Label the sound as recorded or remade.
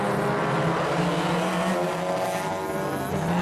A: recorded